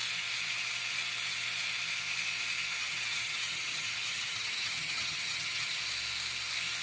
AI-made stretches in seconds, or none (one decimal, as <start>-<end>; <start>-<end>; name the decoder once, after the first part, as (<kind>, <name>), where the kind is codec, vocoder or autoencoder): 2.7-5.8 (vocoder, HiFi-GAN)